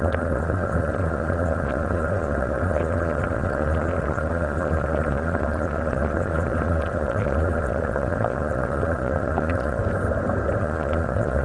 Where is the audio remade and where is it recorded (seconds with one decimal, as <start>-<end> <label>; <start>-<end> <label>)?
0.0-9.8 remade; 9.8-10.6 recorded; 10.6-11.4 remade

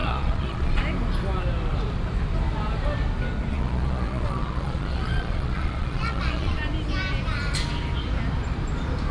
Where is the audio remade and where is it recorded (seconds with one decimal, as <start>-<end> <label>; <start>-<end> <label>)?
0.0-0.8 remade; 0.8-3.5 recorded; 3.5-6.6 remade; 6.6-9.1 recorded

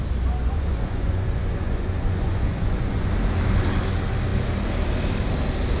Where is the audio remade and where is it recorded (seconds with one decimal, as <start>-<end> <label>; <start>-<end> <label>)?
0.0-0.4 recorded; 0.4-3.1 remade; 3.1-5.8 recorded

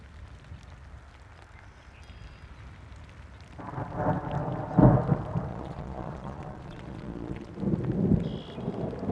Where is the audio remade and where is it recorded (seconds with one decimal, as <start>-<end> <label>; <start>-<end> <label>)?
0.0-5.5 recorded; 5.5-7.5 remade; 7.5-9.1 recorded

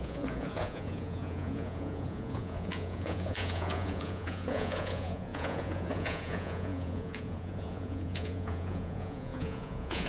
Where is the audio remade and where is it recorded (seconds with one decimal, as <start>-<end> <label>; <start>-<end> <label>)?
0.0-10.1 remade

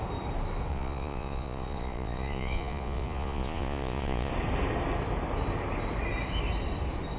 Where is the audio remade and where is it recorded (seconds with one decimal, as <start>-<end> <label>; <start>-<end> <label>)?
0.0-0.7 recorded; 0.7-4.3 remade; 4.3-7.2 recorded

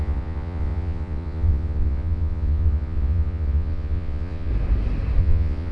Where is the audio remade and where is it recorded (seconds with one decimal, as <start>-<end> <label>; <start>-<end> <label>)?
0.0-4.5 remade; 4.5-5.2 recorded; 5.2-5.7 remade

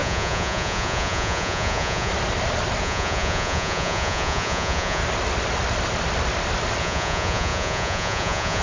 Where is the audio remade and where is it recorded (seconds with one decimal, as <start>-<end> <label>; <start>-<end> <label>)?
0.0-2.1 remade; 2.1-2.8 recorded; 2.8-5.0 remade; 5.0-6.8 recorded; 6.8-8.6 remade